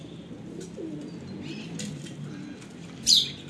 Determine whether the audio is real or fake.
real